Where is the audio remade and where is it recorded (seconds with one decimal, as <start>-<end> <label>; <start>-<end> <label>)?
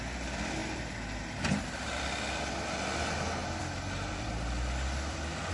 0.0-0.6 recorded; 0.6-1.9 remade; 1.9-3.4 recorded; 3.4-5.5 remade